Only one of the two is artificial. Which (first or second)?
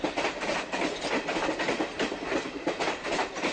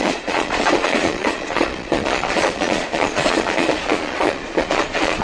second